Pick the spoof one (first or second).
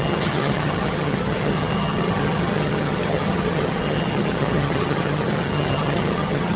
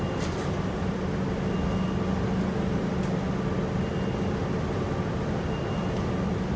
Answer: first